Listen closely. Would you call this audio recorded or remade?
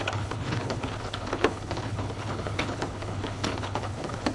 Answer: remade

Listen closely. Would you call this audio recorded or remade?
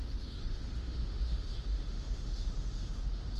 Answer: remade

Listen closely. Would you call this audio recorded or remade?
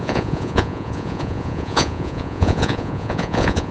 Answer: remade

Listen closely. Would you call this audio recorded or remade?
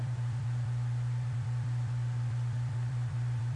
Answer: remade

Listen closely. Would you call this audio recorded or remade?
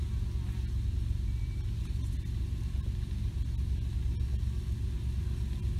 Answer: recorded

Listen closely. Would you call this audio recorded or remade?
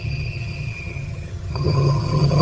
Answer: remade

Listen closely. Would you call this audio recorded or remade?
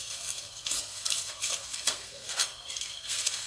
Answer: remade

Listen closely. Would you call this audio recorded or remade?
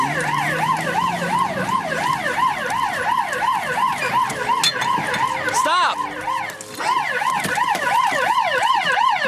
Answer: recorded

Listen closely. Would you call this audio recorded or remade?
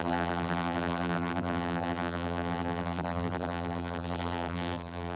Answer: remade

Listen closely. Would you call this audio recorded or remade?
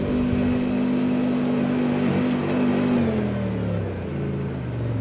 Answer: recorded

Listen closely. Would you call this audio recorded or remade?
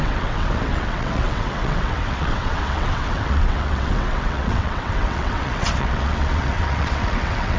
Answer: remade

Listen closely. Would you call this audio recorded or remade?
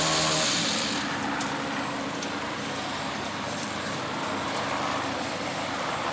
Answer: remade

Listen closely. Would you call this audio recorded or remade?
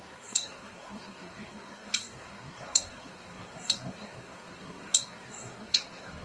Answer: remade